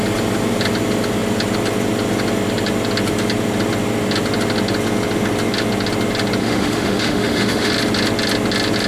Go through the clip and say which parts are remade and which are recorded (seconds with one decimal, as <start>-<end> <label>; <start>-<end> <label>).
0.0-6.4 recorded; 6.4-7.7 remade; 7.7-8.9 recorded